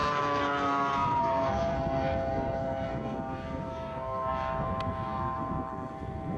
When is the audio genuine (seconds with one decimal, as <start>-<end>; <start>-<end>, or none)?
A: none